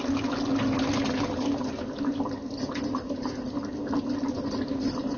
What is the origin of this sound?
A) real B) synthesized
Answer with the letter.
A